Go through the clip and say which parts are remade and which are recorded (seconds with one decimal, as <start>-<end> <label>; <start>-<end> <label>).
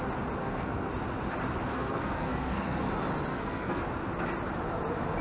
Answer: 0.0-0.4 recorded; 0.4-0.9 remade; 0.9-1.7 recorded; 1.7-2.9 remade; 2.9-3.3 recorded; 3.3-3.8 remade; 3.8-5.2 recorded